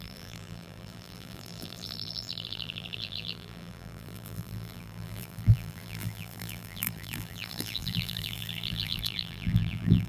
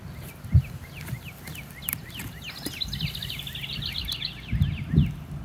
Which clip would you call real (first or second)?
second